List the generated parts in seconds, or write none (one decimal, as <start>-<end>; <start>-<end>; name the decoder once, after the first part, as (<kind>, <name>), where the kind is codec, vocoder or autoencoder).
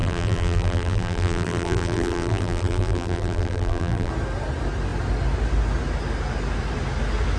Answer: 0.0-4.1 (vocoder, BigVGAN v2)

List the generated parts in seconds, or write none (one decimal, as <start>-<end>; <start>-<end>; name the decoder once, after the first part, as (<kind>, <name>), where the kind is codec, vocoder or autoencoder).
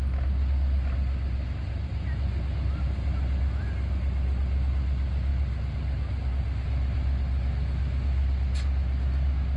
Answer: none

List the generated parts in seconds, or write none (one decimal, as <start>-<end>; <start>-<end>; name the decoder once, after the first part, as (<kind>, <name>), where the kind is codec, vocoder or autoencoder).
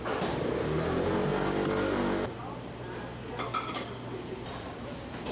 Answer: none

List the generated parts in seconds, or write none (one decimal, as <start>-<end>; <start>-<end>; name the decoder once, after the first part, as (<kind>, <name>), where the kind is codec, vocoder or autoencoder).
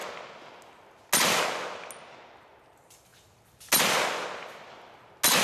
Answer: none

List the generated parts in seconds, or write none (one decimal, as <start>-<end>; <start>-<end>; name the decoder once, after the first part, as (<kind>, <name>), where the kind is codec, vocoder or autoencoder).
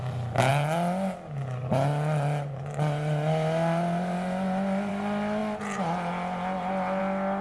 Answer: none